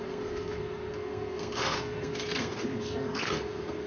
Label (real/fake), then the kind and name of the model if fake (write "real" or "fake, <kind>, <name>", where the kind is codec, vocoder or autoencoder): fake, codec, SNAC